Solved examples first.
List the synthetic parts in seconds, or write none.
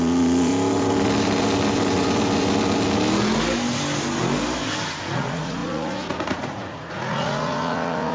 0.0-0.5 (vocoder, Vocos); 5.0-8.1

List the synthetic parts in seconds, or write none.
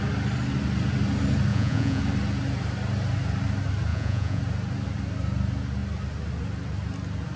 1.5-2.0 (vocoder, Vocos); 3.9-4.4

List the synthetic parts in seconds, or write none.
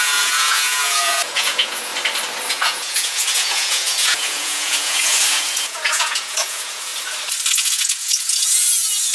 0.0-1.9 (vocoder, Vocos); 2.5-6.9; 7.5-9.1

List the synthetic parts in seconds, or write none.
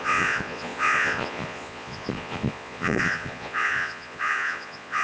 0.0-5.0 (vocoder, Vocos)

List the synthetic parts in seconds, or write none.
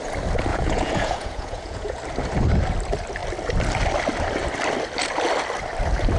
0.5-2.0 (vocoder, Vocos)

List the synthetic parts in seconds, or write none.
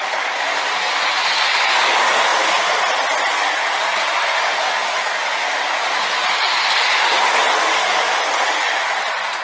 none